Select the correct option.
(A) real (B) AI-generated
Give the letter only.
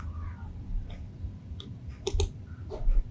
A